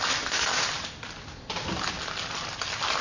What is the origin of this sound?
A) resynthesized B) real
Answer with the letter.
B